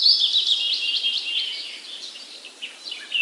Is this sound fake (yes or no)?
no